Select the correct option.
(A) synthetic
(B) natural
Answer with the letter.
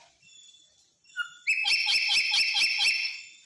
B